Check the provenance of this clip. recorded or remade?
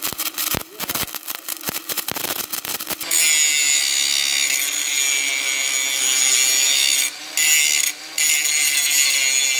recorded